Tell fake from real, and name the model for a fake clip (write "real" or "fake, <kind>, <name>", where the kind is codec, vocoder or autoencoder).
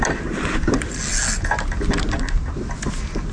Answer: real